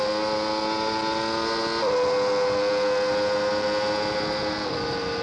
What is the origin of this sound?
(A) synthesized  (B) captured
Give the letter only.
B